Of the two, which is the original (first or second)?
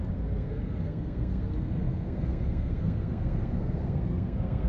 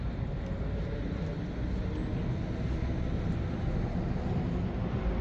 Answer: second